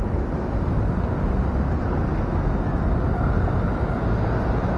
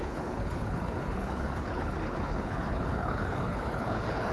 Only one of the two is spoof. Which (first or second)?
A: second